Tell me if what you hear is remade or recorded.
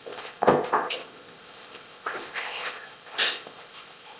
remade